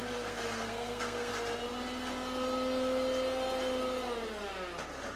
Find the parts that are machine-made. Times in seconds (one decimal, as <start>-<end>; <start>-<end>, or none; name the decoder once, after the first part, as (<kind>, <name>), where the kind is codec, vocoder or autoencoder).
0.0-1.3 (codec, SNAC)